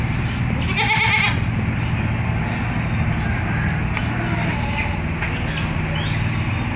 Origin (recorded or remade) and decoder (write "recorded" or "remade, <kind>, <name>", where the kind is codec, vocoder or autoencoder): recorded